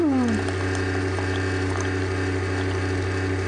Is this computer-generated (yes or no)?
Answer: no